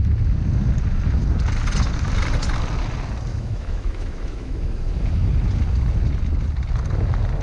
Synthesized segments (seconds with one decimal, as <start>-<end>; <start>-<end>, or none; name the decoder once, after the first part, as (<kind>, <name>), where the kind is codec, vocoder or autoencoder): 3.3-4.9 (autoencoder, DAC-VAE)

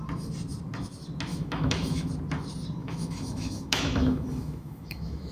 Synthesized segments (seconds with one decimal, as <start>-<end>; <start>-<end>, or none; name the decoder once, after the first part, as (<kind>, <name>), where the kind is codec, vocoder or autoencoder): 1.3-2.1 (autoencoder, DAC-VAE); 2.8-5.3